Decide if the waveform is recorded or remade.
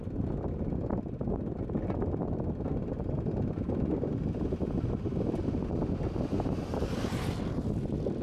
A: recorded